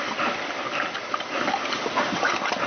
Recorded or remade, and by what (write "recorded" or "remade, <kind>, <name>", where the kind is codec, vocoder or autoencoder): recorded